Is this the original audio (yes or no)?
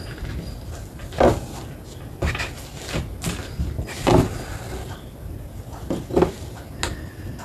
yes